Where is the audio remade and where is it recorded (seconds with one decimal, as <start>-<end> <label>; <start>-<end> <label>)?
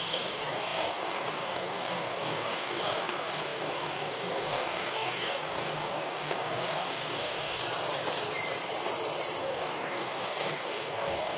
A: 0.0-7.6 remade; 7.6-9.4 recorded; 9.4-11.4 remade